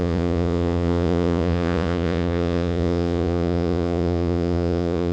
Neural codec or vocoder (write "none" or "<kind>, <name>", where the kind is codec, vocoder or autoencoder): vocoder, Vocos